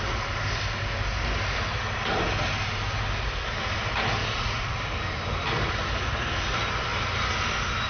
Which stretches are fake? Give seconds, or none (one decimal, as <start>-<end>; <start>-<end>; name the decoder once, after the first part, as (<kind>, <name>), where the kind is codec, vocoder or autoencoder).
4.2-4.8 (vocoder, Vocos)